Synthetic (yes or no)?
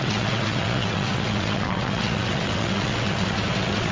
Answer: yes